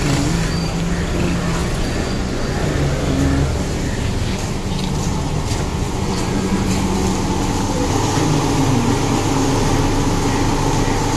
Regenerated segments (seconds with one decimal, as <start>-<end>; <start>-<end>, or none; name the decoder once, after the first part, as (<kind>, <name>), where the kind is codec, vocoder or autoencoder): 1.6-2.6 (vocoder, Vocos); 5.7-6.5